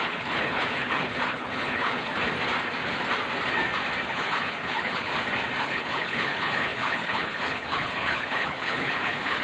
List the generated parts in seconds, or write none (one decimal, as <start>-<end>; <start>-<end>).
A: 0.0-2.1; 4.1-5.1; 5.6-9.4